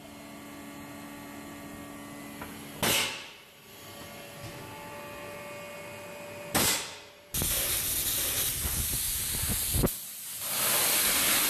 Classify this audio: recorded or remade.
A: recorded